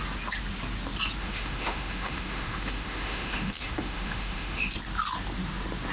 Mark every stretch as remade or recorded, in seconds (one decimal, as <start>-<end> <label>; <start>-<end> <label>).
0.0-1.2 recorded; 1.2-4.7 remade; 4.7-5.9 recorded